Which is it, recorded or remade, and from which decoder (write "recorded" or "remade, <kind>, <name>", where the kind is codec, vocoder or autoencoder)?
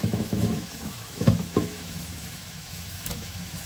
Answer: remade, autoencoder, DAC-VAE